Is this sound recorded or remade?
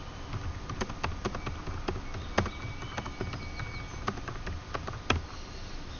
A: recorded